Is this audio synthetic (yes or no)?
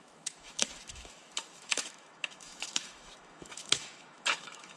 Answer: yes